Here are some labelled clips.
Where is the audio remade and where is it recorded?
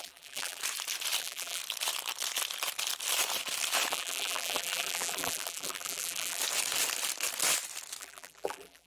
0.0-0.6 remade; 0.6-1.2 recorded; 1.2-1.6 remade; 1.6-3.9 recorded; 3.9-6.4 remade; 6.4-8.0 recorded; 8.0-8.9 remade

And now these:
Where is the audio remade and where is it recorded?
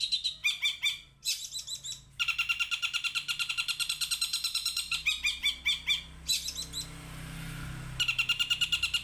0.0-0.4 recorded; 0.4-3.5 remade; 3.5-4.3 recorded; 4.3-5.5 remade; 5.5-9.0 recorded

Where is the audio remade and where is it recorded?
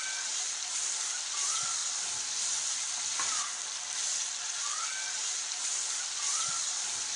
0.0-7.2 remade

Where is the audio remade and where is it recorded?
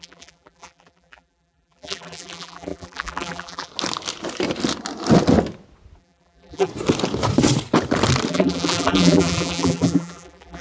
0.0-3.7 remade; 3.7-6.0 recorded; 6.0-6.7 remade; 6.7-8.3 recorded; 8.3-10.6 remade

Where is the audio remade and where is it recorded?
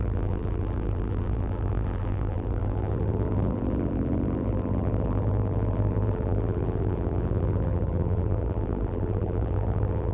0.0-10.1 remade